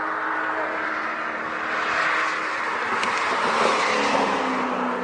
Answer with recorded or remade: recorded